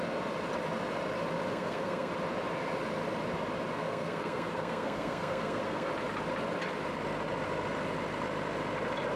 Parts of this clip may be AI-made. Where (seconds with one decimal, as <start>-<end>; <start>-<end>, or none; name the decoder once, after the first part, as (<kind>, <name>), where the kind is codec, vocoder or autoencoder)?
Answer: 1.5-2.1 (codec, SNAC); 3.7-5.9